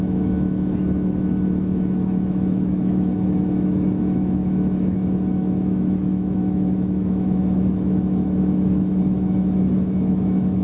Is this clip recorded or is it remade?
remade